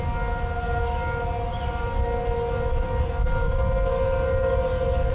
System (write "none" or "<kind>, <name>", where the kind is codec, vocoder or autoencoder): none